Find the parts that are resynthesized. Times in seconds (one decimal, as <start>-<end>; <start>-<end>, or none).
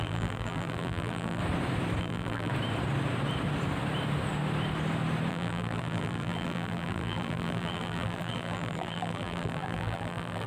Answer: 0.0-1.4; 2.0-2.5; 5.3-10.5